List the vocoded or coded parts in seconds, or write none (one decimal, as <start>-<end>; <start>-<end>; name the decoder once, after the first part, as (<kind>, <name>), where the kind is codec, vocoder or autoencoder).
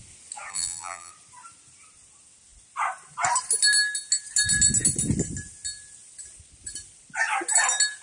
0.5-1.1 (vocoder, BigVGAN v2)